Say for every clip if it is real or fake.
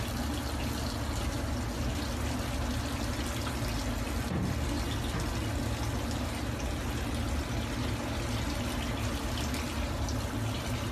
real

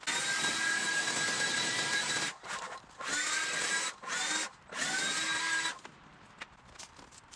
real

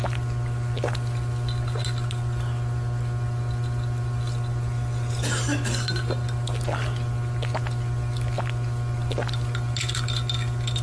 real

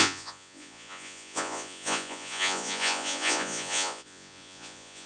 fake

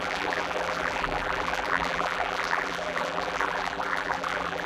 fake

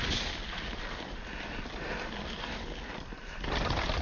real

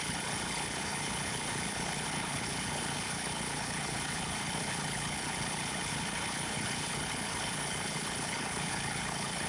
fake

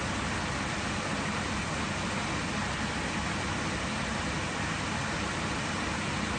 real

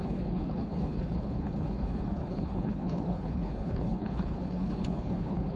fake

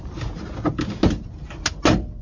real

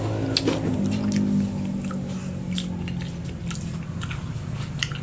real